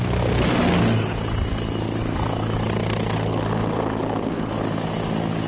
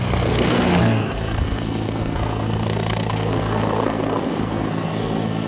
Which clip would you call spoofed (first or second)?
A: second